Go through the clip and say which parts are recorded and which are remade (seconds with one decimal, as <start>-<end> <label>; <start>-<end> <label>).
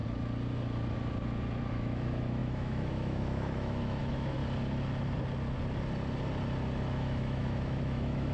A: 0.0-1.7 recorded; 1.7-4.4 remade; 4.4-6.9 recorded; 6.9-8.3 remade